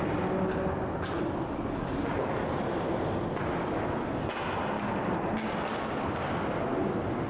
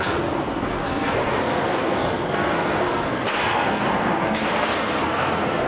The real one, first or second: first